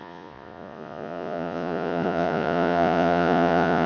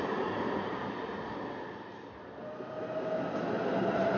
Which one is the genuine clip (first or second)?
second